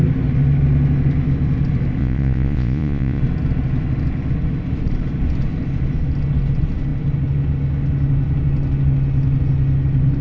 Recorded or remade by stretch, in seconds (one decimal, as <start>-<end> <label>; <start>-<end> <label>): 0.0-2.0 recorded; 2.0-3.2 remade; 3.2-10.2 recorded